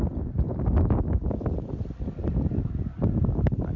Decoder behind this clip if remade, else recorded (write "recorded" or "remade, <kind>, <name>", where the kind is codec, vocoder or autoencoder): recorded